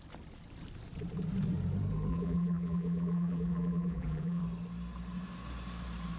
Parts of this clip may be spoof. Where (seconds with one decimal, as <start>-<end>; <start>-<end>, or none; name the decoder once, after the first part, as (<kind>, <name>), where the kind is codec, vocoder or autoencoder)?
2.1-4.4 (vocoder, BigVGAN v2)